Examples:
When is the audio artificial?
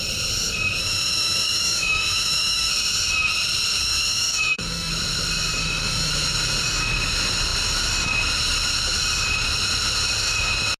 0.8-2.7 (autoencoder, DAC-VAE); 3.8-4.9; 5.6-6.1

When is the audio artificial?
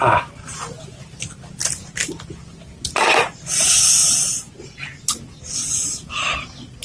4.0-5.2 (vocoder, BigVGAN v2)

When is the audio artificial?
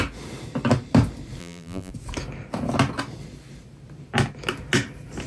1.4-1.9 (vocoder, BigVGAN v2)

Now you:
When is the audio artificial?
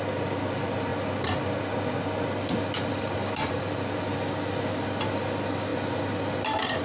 0.0-0.9 (vocoder, BigVGAN v2); 2.9-5.7